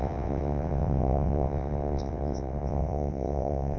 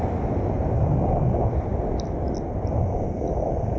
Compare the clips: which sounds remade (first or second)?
first